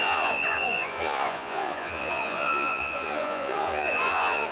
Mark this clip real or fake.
fake